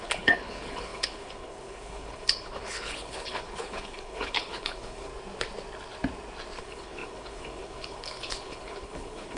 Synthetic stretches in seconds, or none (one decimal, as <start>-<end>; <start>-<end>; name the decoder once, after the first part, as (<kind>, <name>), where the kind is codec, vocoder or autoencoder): 0.0-5.1 (codec, HILCodec); 6.6-9.4